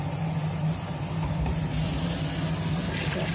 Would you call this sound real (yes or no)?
yes